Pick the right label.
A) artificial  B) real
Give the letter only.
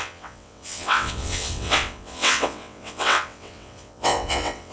A